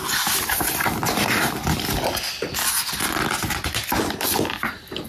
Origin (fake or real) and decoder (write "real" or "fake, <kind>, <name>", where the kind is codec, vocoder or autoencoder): real